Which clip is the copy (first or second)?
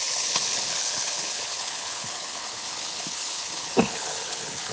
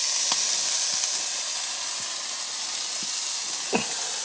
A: first